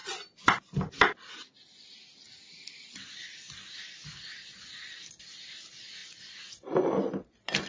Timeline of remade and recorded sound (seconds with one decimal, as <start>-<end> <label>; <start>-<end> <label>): 0.0-7.7 recorded